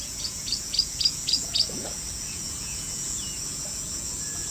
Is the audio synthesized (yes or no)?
yes